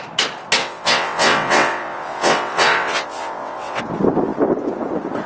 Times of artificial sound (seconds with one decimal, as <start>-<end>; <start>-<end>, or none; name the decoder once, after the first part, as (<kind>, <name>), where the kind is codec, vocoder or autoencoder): 0.6-3.8 (vocoder, WaveNeXt)